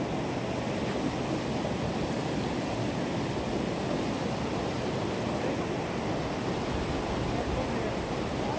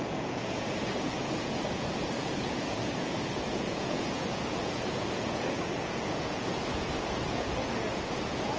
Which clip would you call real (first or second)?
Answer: first